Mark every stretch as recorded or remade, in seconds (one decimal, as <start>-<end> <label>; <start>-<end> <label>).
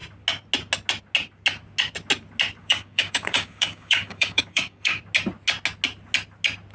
0.0-2.6 recorded; 2.6-5.0 remade; 5.0-6.7 recorded